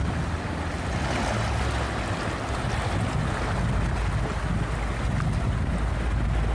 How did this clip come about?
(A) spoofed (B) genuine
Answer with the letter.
B